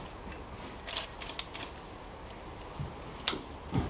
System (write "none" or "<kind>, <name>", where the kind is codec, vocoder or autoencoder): none